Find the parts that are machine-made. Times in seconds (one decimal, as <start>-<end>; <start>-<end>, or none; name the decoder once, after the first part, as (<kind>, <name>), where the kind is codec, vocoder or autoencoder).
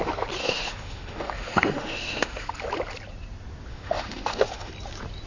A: 0.4-2.5 (autoencoder, DAC-VAE); 3.7-4.7